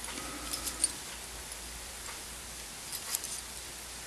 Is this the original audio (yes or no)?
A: yes